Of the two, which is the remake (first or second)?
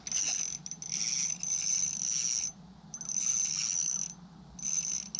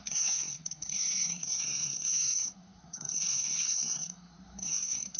second